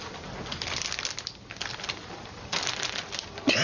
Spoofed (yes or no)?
no